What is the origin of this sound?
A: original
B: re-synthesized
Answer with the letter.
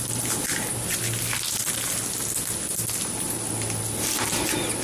A